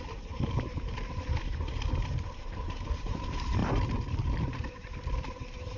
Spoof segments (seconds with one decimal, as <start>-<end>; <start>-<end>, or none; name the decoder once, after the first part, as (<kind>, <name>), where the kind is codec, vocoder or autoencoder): 0.0-5.8 (vocoder, BigVGAN v2)